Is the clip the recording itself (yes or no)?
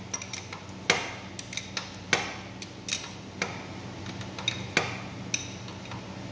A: yes